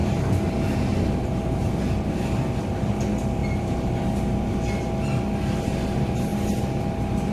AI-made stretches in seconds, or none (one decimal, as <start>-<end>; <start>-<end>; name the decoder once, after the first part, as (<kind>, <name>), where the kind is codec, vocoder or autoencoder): 3.4-3.9 (vocoder, BigVGAN v2); 6.3-7.3